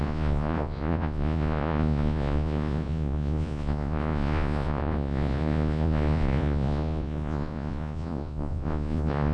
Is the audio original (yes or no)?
no